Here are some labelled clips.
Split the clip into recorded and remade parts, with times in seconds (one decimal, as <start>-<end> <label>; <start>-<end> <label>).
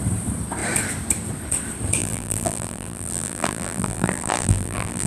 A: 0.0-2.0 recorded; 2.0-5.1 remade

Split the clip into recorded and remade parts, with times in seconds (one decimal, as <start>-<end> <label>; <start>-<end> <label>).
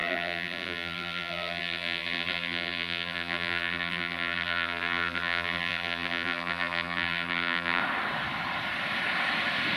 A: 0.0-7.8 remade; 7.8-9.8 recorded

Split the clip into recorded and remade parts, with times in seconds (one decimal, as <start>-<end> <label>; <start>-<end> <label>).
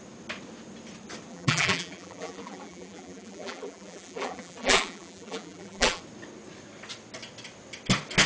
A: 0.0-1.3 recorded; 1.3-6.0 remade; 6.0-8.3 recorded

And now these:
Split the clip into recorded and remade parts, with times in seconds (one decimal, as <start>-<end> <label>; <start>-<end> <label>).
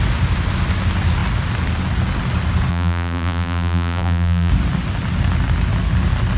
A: 0.0-2.7 recorded; 2.7-4.5 remade; 4.5-6.4 recorded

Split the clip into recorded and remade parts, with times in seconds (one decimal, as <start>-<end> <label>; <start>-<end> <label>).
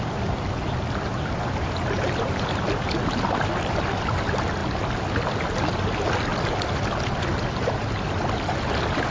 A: 0.0-6.3 recorded; 6.3-7.2 remade; 7.2-9.1 recorded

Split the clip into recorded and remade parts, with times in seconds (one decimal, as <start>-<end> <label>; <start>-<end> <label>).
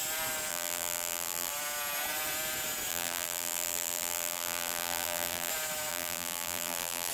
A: 0.0-0.5 recorded; 0.5-1.5 remade; 1.5-2.9 recorded; 2.9-5.5 remade; 5.5-5.9 recorded; 5.9-7.1 remade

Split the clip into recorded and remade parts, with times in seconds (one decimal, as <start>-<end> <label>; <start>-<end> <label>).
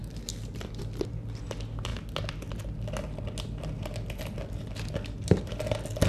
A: 0.0-0.7 remade; 0.7-6.1 recorded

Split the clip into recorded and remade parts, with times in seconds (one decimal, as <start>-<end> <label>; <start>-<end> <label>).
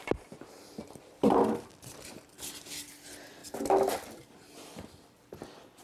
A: 0.0-0.8 recorded; 0.8-2.9 remade; 2.9-3.4 recorded; 3.4-5.3 remade; 5.3-5.8 recorded